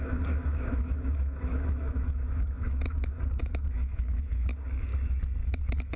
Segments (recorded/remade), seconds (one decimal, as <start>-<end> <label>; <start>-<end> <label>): 0.0-4.9 remade; 4.9-5.4 recorded; 5.4-6.0 remade